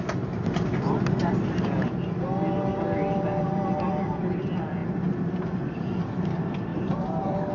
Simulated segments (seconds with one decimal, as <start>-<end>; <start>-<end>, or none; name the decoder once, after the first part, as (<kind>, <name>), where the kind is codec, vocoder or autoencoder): 2.7-3.4 (vocoder, BigVGAN v2); 6.7-7.5